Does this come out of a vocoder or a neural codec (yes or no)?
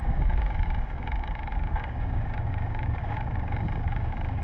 yes